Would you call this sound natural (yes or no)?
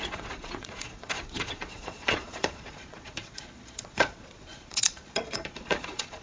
no